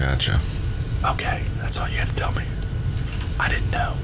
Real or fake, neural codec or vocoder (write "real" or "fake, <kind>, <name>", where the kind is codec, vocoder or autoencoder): real